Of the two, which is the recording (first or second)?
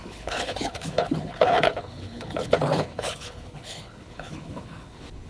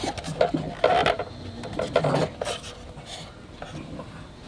second